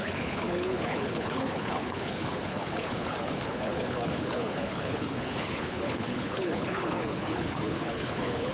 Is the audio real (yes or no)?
no